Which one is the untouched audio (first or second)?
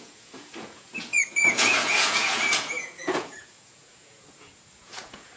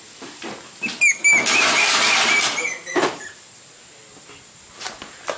second